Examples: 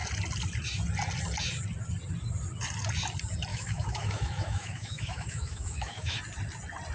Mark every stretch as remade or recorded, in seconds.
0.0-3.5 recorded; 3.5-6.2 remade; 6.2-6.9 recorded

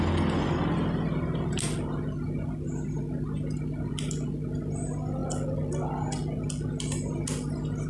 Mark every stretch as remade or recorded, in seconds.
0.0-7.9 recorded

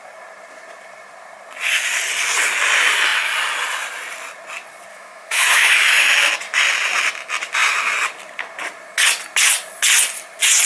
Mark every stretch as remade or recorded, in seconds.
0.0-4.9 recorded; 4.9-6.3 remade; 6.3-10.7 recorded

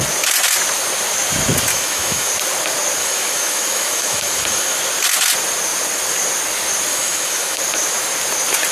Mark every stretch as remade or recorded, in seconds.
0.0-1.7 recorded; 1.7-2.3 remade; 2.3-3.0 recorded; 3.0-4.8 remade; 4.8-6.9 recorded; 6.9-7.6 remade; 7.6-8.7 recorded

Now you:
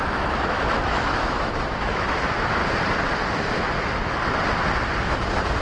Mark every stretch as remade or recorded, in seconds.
0.0-2.6 remade; 2.6-5.6 recorded

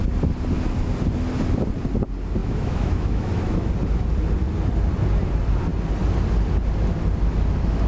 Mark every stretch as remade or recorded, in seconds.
0.0-2.4 recorded; 2.4-3.7 remade; 3.7-7.9 recorded

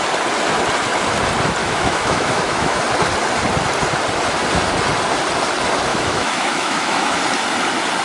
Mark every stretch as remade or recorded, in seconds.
0.0-1.6 recorded; 1.6-2.8 remade; 2.8-5.9 recorded; 5.9-7.2 remade; 7.2-8.0 recorded